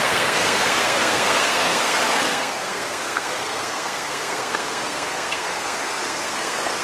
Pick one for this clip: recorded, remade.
remade